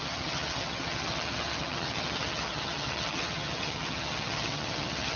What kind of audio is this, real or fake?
fake